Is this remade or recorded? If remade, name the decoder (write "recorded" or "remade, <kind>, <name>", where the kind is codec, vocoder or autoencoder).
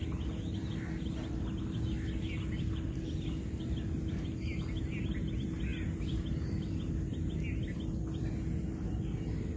recorded